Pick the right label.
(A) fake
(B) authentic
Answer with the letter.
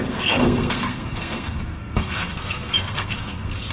A